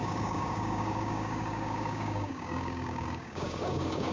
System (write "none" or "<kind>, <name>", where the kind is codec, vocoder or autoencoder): codec, DAC